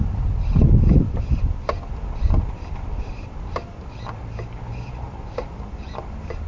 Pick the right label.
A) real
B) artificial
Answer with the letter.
A